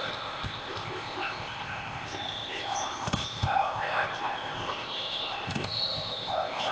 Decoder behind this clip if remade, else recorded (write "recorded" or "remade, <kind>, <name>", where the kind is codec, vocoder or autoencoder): remade, codec, ZipCodec